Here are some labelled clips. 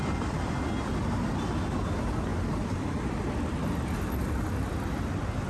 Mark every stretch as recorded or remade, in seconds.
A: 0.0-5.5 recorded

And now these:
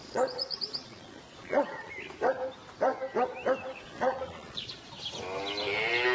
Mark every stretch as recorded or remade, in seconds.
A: 0.0-1.9 remade; 1.9-3.7 recorded; 3.7-4.9 remade; 4.9-6.1 recorded

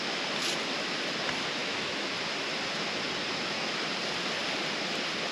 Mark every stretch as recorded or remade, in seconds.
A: 0.0-1.6 recorded; 1.6-2.1 remade; 2.1-5.3 recorded

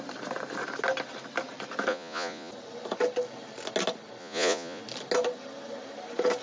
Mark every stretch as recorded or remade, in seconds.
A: 0.0-1.9 recorded; 1.9-2.5 remade; 2.5-4.2 recorded; 4.2-4.8 remade; 4.8-6.4 recorded